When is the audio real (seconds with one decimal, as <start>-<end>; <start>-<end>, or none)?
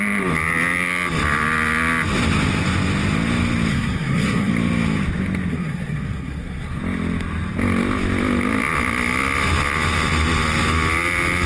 0.0-3.7; 4.5-5.5; 6.8-11.5